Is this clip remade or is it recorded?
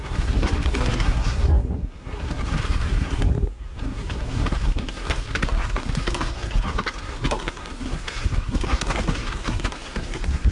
remade